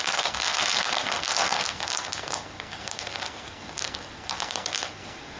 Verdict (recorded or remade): remade